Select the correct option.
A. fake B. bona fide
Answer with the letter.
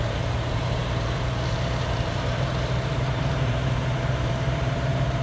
A